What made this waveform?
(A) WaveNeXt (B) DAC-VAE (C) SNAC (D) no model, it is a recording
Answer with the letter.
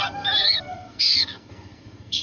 C